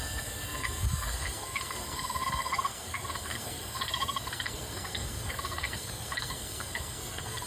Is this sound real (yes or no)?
no